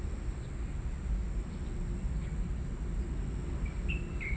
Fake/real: real